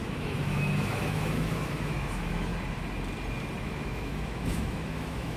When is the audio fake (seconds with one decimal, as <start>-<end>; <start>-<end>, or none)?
0.0-2.5; 3.6-5.4

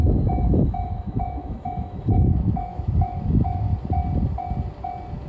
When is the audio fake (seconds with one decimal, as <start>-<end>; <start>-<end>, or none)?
0.0-3.7